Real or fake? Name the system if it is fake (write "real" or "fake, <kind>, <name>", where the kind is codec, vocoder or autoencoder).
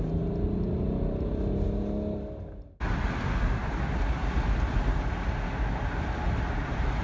real